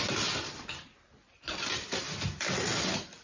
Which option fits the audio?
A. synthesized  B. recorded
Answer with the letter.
B